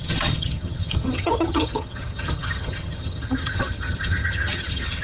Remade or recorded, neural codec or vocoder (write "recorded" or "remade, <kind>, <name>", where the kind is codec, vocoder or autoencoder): remade, vocoder, HiFi-GAN